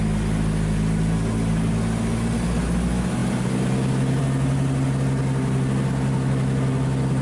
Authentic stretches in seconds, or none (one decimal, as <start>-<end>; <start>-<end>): 0.0-7.2